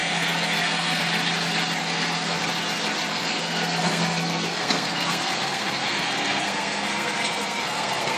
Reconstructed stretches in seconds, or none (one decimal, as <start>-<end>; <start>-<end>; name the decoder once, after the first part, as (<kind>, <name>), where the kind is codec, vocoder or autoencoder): 0.0-1.0 (codec, SNAC); 1.8-2.4; 3.1-8.2